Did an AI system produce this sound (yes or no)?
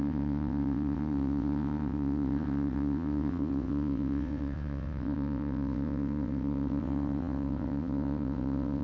yes